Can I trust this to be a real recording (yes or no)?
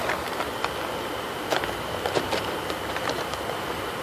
yes